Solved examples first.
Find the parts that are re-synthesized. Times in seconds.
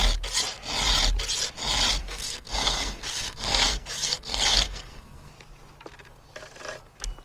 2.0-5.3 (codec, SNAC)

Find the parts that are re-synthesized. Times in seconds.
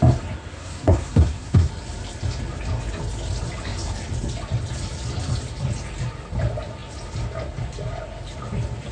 0.5-1.7 (codec, SNAC)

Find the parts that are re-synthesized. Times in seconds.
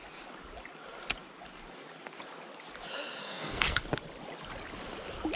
3.2-3.8 (codec, SNAC)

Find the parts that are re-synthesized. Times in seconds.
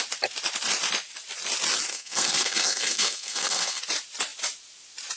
1.9-3.8 (codec, SNAC)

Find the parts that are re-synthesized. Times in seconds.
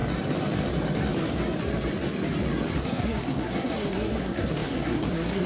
2.8-5.5 (codec, SNAC)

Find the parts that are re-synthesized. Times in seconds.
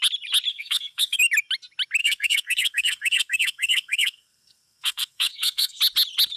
0.5-1.2 (codec, SNAC); 2.0-5.8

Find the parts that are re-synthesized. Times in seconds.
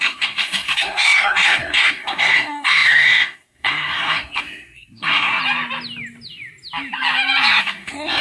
0.0-5.4 (codec, SNAC); 7.6-8.2